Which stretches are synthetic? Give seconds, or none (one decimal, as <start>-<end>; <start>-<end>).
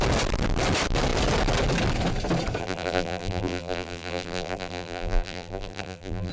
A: 2.6-6.3